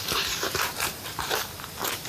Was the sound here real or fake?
fake